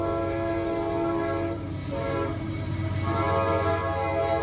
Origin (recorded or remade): recorded